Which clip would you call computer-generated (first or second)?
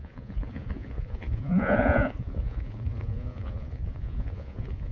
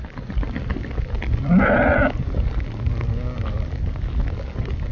first